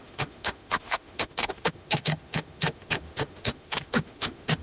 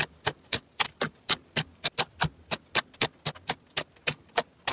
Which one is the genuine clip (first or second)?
second